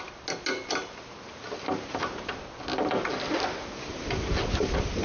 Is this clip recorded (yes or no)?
yes